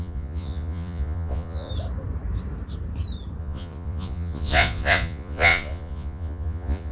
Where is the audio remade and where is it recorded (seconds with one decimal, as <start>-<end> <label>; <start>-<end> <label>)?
0.0-1.7 remade; 1.7-3.4 recorded; 3.4-6.9 remade